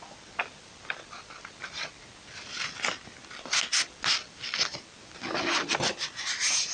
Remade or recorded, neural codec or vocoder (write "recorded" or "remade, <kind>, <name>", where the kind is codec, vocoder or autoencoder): recorded